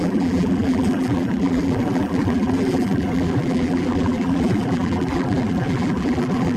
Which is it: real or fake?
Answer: fake